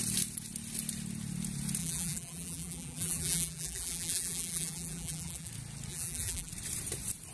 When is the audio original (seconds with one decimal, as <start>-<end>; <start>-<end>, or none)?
0.0-1.8; 5.5-5.9; 6.5-7.3